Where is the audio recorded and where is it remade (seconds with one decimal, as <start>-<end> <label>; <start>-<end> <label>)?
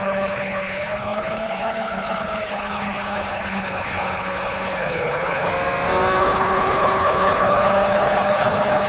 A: 0.0-5.5 remade; 5.5-6.2 recorded; 6.2-8.9 remade